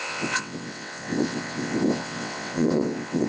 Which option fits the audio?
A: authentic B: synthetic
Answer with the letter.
B